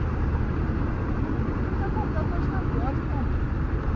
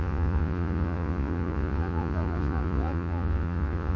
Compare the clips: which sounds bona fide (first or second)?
first